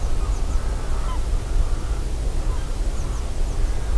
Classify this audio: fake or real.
real